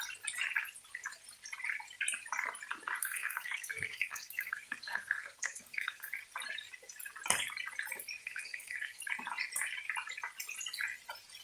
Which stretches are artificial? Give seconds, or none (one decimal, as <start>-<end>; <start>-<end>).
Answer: 3.0-6.1; 8.2-9.0

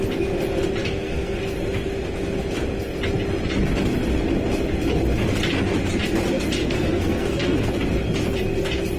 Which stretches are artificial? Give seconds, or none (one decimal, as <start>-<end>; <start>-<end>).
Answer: 0.8-1.4; 6.6-7.7

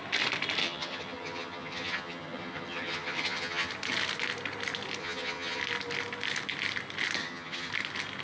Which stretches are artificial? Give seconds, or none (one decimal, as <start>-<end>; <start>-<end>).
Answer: 0.6-3.7; 5.0-5.6; 7.2-7.7

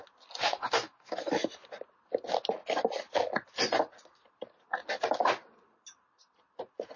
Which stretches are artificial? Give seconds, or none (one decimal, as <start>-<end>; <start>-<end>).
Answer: 0.4-1.2

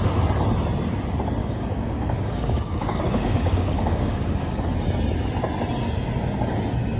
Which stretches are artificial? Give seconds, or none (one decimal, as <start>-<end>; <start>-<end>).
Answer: 1.4-4.6

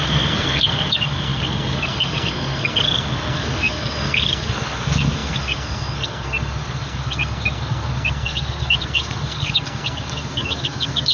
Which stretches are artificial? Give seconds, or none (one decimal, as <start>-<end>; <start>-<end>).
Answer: 0.0-11.1

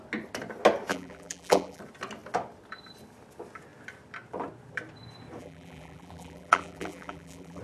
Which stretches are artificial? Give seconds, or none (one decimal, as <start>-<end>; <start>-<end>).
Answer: 0.9-1.8; 5.4-7.6